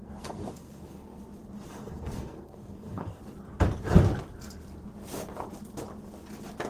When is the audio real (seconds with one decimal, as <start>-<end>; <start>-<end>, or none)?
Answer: 1.2-1.7; 3.2-6.7